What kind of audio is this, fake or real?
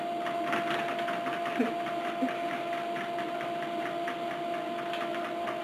real